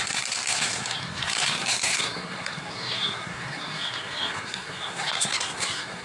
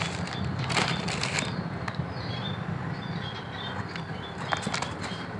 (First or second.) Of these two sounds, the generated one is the first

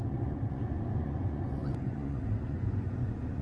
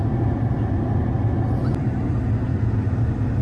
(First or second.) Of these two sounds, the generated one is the first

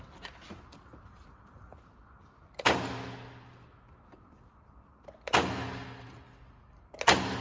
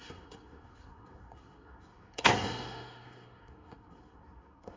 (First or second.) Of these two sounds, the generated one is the second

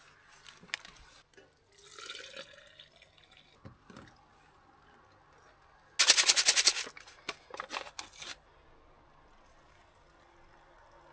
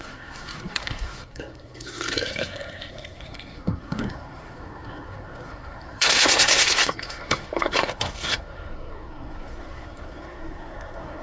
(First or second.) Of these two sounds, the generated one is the second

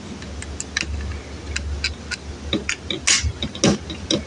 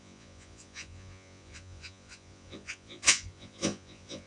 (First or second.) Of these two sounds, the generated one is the second